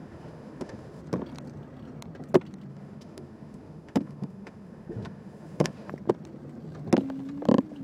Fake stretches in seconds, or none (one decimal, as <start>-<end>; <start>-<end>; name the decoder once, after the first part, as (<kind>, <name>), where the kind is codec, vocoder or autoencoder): 0.0-1.0 (autoencoder, DAC-VAE); 2.7-5.9